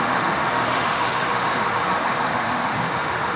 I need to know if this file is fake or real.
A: fake